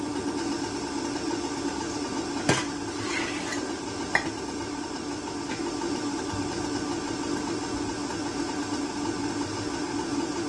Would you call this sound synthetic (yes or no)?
no